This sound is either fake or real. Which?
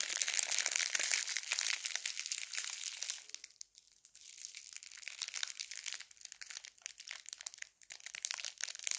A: real